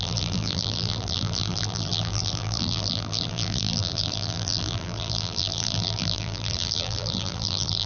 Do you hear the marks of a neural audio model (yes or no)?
yes